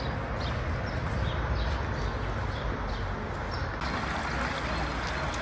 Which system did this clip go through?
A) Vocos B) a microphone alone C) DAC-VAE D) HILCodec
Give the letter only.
B